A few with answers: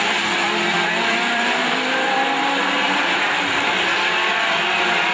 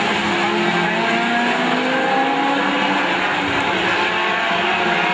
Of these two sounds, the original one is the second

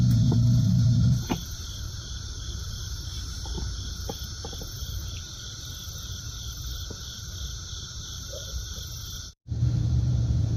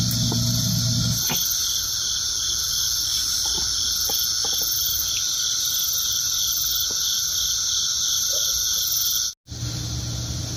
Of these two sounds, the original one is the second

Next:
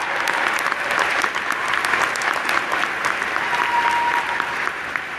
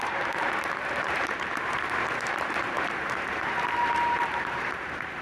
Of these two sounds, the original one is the first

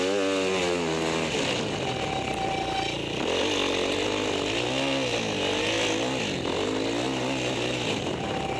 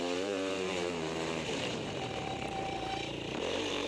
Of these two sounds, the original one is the first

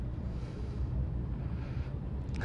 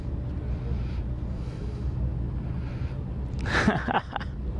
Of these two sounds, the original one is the second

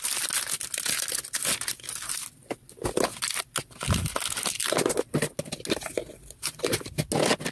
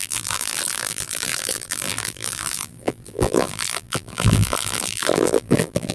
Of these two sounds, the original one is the first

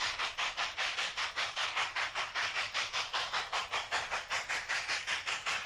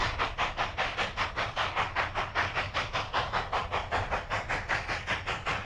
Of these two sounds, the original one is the second